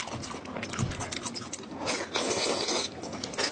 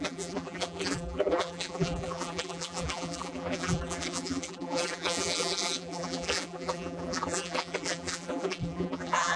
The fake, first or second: second